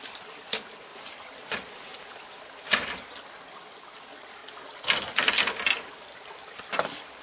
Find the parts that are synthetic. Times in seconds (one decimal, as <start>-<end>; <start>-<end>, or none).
none